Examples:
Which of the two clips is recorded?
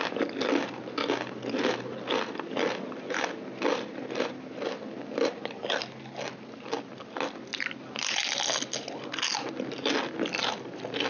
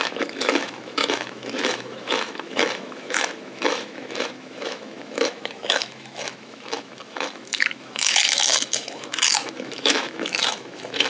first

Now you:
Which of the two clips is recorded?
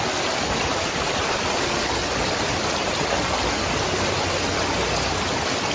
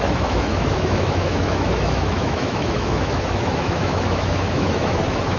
first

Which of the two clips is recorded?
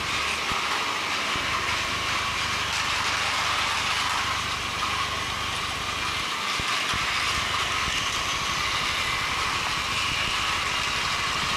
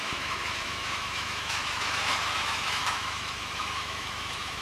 first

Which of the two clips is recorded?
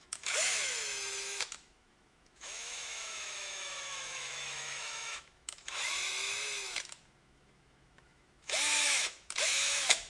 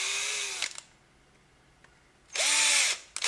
second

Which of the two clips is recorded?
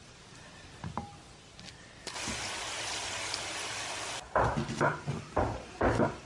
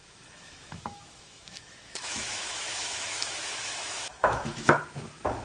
first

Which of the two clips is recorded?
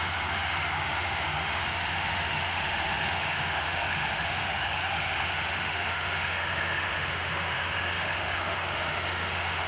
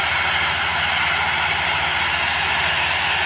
second